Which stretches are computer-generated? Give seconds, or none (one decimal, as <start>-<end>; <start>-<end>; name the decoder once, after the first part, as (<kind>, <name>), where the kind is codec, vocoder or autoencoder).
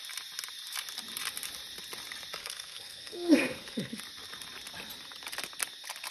2.4-4.0 (codec, SNAC)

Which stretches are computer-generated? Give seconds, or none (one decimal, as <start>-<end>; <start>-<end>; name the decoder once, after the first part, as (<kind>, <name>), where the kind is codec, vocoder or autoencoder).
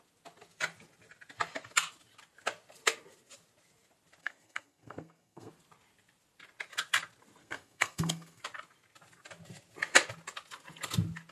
4.2-5.5 (codec, SNAC); 7.4-8.4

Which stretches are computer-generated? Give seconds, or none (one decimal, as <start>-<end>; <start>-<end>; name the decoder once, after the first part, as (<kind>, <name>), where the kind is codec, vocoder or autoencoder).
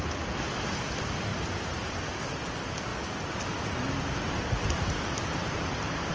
none